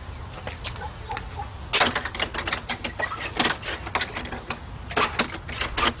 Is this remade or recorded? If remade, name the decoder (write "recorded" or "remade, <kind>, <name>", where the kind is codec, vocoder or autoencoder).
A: recorded